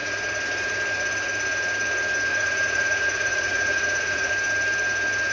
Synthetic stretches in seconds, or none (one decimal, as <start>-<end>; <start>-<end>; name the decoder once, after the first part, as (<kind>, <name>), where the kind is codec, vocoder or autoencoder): 2.3-4.3 (vocoder, Vocos)